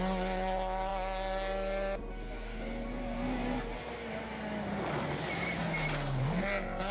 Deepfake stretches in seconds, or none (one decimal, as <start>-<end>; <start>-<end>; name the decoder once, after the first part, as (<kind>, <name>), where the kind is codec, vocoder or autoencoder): none